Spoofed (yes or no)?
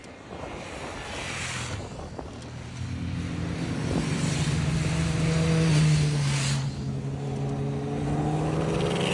no